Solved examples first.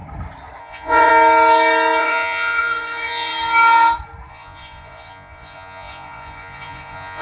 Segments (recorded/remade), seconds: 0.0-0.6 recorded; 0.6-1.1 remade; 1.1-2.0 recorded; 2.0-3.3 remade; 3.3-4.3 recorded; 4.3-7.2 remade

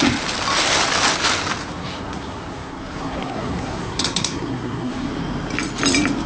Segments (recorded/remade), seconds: 0.0-1.6 recorded; 1.6-5.1 remade; 5.1-6.3 recorded

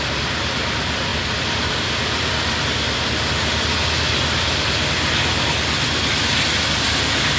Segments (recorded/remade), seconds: 0.0-7.4 recorded